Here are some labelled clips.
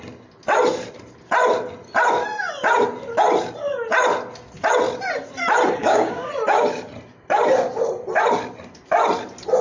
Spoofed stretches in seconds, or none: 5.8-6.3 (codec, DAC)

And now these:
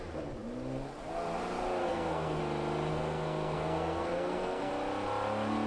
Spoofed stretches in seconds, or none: 1.8-2.4 (codec, SNAC); 2.9-4.7